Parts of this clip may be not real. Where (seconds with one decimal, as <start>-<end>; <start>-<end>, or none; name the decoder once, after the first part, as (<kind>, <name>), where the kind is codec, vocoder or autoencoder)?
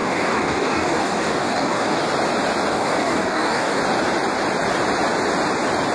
0.0-2.0 (codec, DAC); 2.7-3.8